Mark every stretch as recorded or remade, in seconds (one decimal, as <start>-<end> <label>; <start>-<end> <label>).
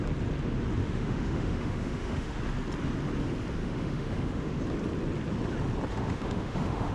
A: 0.0-0.8 recorded; 0.8-2.4 remade; 2.4-3.6 recorded; 3.6-4.6 remade; 4.6-5.9 recorded; 5.9-6.9 remade